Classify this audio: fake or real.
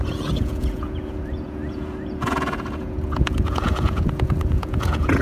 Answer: fake